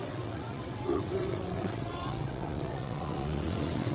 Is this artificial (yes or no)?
yes